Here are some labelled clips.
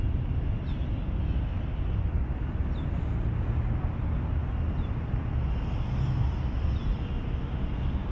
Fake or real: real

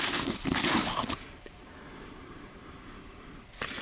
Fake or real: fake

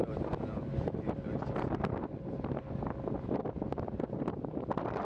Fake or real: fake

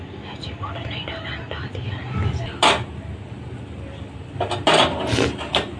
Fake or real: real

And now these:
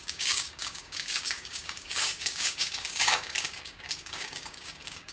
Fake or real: fake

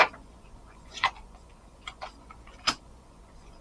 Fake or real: fake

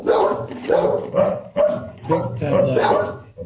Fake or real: fake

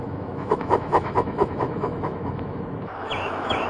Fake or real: fake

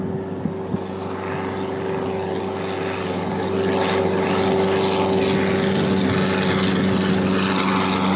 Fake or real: real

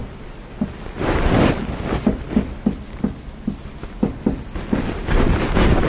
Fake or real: real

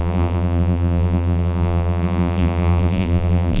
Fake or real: fake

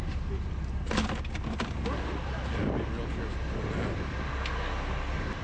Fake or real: real